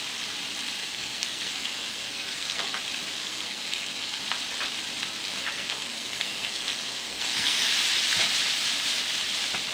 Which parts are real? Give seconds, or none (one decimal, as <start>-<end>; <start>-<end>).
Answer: 0.0-0.8; 2.8-3.2; 4.2-5.3; 7.7-9.7